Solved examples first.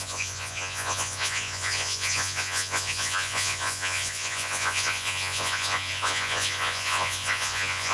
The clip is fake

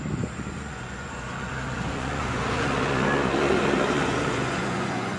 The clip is fake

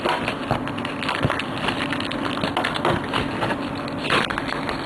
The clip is real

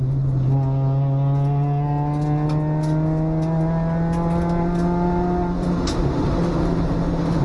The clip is real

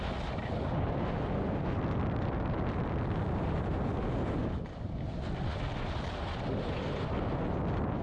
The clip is real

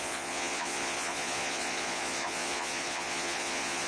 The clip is fake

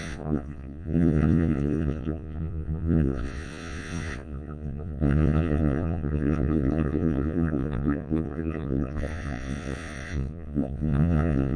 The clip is fake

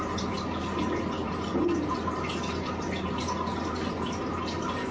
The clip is real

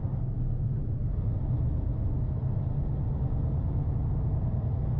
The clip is real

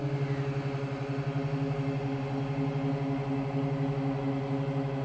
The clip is real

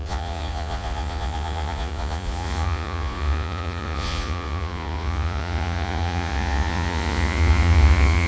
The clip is fake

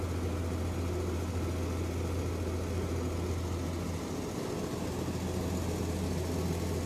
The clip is real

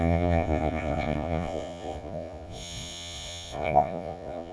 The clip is fake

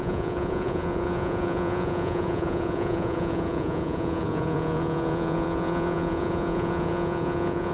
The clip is fake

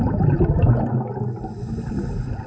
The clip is real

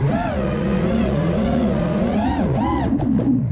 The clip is fake